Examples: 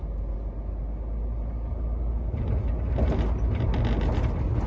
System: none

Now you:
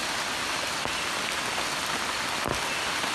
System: none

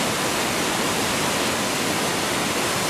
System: none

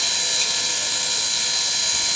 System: none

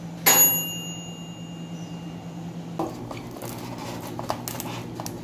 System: none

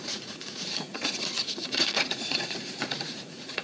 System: vocoder, Vocos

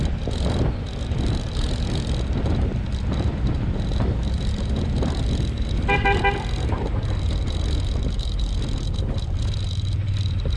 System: vocoder, BigVGAN v2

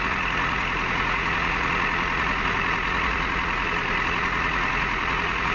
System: vocoder, Vocos